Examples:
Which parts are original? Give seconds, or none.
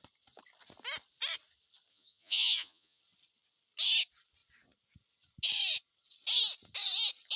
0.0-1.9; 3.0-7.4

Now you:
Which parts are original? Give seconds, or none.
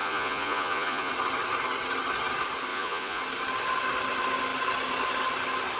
1.1-2.7; 3.2-5.8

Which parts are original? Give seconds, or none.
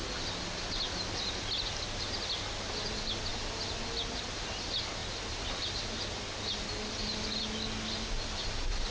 0.0-8.9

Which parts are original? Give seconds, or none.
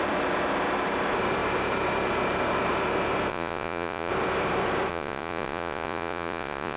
0.0-3.3; 4.1-4.9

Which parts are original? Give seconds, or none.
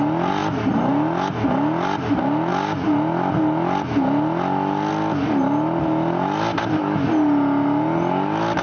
0.0-8.6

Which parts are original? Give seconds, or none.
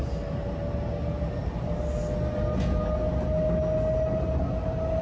0.0-5.0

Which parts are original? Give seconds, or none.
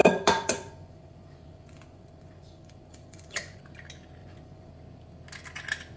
3.6-4.2; 4.7-6.0